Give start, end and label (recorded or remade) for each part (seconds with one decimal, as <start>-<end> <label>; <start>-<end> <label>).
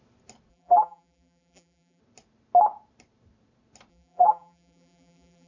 0.0-0.5 recorded; 0.5-2.0 remade; 2.0-3.9 recorded; 3.9-5.5 remade